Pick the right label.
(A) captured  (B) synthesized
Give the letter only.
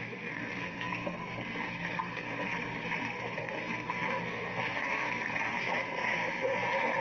B